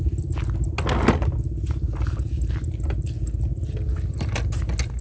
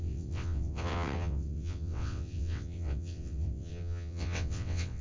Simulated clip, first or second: second